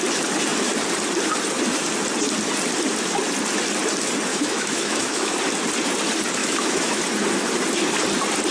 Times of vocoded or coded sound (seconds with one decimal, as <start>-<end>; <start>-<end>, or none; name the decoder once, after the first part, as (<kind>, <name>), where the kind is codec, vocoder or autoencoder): 4.3-5.3 (autoencoder, DAC-VAE); 6.4-7.0